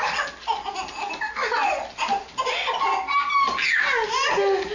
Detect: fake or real real